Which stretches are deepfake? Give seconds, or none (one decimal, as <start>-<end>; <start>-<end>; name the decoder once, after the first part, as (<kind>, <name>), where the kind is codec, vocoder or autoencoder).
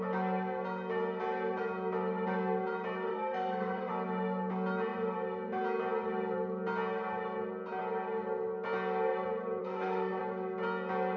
3.1-3.9 (codec, SNAC); 9.6-10.2